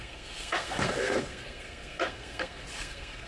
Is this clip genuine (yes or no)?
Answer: no